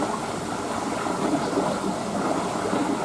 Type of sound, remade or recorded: recorded